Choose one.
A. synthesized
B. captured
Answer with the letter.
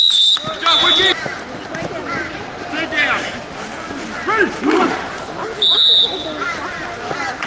B